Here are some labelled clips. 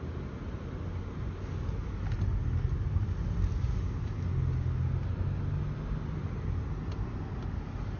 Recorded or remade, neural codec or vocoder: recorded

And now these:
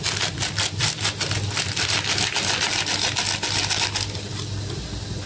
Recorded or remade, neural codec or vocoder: recorded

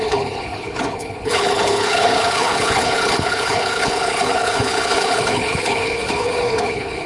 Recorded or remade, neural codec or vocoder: remade, codec, HILCodec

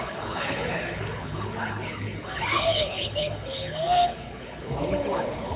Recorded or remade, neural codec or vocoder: remade, codec, HILCodec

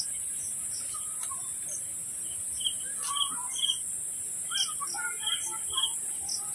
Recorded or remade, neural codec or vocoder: recorded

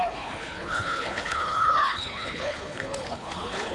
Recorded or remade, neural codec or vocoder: remade, codec, HILCodec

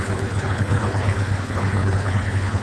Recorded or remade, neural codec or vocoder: remade, codec, HILCodec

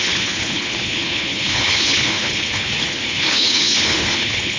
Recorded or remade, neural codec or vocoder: remade, codec, HILCodec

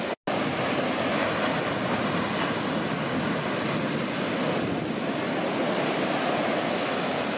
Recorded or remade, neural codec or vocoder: recorded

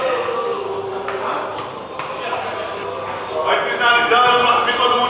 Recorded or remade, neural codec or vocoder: recorded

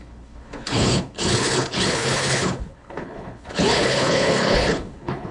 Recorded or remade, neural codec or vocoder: remade, codec, HILCodec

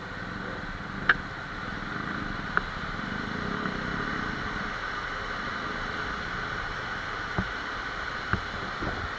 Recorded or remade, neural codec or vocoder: recorded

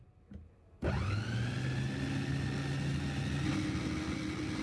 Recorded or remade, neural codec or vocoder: recorded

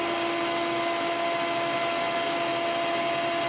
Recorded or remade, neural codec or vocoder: recorded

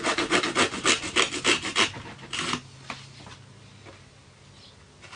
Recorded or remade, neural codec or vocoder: recorded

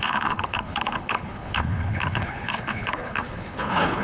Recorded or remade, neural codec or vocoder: remade, codec, HILCodec